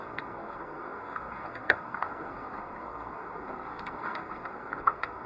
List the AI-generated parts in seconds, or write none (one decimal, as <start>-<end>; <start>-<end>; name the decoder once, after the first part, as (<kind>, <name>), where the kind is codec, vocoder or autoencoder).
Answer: 0.0-5.3 (codec, SNAC)